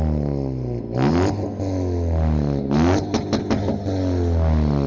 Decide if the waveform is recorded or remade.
recorded